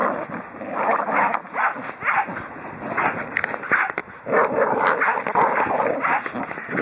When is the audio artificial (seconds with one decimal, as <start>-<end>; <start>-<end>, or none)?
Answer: none